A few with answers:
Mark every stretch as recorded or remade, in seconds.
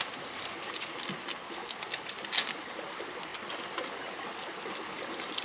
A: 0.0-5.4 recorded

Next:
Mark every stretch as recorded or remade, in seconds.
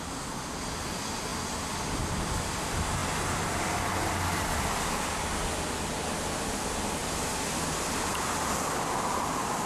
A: 0.0-9.7 recorded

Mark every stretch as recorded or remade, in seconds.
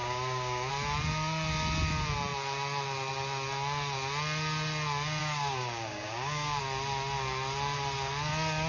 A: 0.0-0.7 remade; 0.7-5.2 recorded; 5.2-6.6 remade; 6.6-8.7 recorded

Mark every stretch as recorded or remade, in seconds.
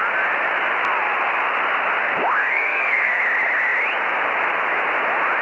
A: 0.0-2.4 recorded; 2.4-3.2 remade; 3.2-5.4 recorded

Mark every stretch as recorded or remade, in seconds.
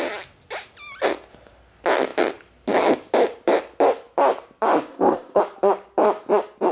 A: 0.0-4.9 recorded; 4.9-5.4 remade; 5.4-6.7 recorded